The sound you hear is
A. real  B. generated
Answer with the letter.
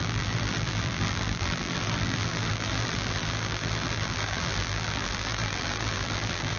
B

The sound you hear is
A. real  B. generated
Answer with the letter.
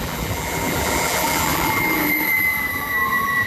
B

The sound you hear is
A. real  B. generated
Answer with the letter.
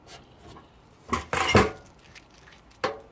A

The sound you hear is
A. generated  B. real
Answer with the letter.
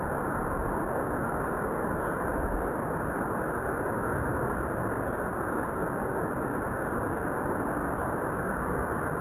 B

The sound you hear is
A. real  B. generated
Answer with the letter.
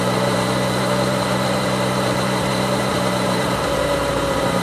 B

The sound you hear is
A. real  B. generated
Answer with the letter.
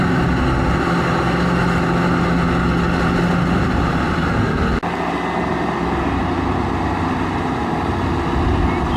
A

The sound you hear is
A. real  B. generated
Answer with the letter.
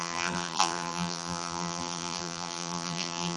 B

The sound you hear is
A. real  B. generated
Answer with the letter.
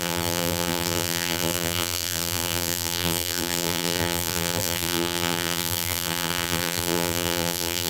B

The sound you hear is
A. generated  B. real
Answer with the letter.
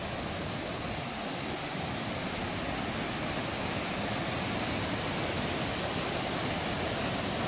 B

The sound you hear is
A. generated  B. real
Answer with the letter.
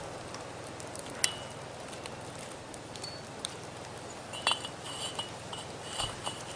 B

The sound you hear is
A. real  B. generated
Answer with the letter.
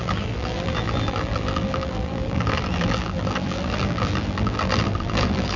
B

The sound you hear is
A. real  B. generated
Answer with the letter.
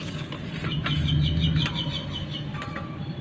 A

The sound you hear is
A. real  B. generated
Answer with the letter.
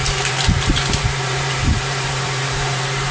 B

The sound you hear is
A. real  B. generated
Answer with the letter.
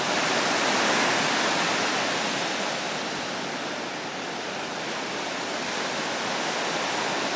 A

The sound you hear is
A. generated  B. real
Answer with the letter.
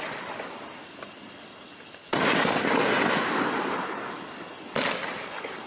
B